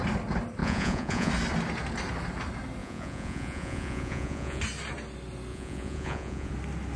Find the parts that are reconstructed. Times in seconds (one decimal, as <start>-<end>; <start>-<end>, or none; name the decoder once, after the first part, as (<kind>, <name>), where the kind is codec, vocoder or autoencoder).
0.6-1.3 (vocoder, Vocos); 2.8-4.6; 5.5-6.5